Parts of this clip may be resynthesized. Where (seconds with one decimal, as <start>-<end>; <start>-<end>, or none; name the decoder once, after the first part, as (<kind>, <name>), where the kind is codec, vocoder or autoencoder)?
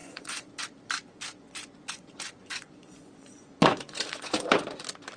0.0-0.5 (vocoder, Vocos); 1.3-4.4